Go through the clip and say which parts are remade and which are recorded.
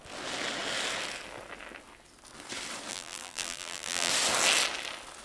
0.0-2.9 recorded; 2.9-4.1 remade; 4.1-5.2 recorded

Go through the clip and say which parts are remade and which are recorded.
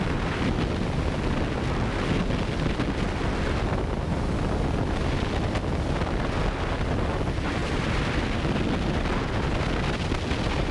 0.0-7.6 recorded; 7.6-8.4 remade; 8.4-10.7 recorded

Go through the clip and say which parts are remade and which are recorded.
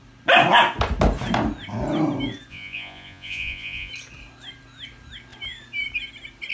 0.0-2.5 recorded; 2.5-3.9 remade; 3.9-6.5 recorded